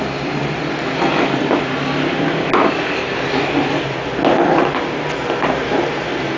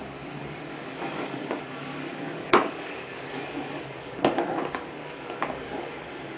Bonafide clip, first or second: first